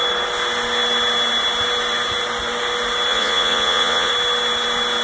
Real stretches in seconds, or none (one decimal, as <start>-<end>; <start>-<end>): 0.0-3.1; 4.1-5.0